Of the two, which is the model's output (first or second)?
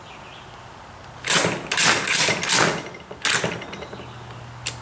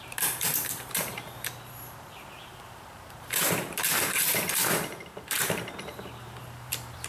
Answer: second